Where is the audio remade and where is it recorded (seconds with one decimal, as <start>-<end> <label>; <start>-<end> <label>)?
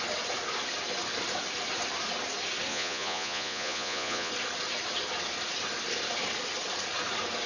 0.0-2.7 recorded; 2.7-4.3 remade; 4.3-7.5 recorded